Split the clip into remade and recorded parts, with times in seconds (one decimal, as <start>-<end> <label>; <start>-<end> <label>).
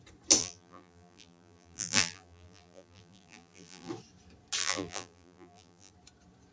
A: 0.0-0.4 recorded; 0.4-3.9 remade; 3.9-4.6 recorded; 4.6-5.9 remade; 5.9-6.5 recorded